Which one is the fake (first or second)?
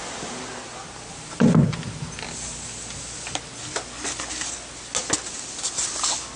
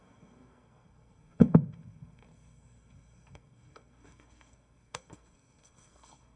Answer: second